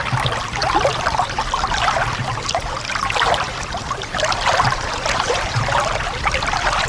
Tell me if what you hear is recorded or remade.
recorded